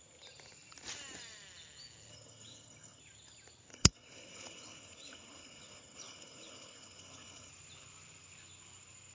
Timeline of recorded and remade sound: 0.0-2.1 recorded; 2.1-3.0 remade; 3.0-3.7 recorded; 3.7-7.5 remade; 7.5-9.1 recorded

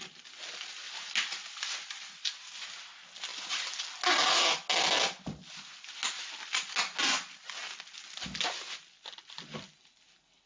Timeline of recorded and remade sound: 0.0-10.5 recorded

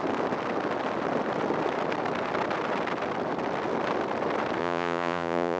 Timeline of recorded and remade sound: 0.0-4.6 recorded; 4.6-5.6 remade

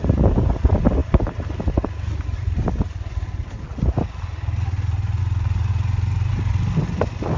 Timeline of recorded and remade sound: 0.0-7.4 recorded

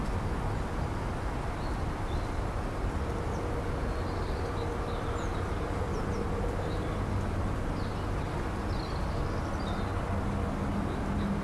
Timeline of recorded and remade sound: 0.0-11.4 recorded

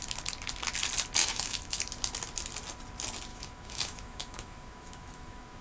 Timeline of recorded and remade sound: 0.0-1.2 recorded; 1.2-1.8 remade; 1.8-3.3 recorded; 3.3-5.6 remade